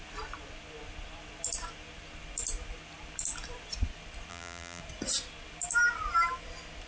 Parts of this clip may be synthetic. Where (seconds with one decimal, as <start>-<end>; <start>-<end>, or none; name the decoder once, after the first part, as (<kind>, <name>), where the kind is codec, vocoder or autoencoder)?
4.3-4.8 (vocoder, BigVGAN v2)